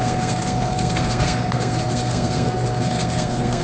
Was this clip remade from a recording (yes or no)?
yes